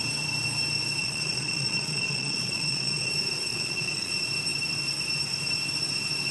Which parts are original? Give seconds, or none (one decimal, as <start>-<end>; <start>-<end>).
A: 0.0-1.0; 3.1-3.5; 4.1-6.3